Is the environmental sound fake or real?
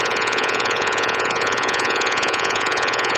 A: fake